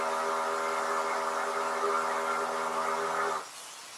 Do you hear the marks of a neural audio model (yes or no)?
no